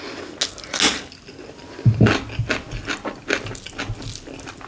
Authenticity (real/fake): real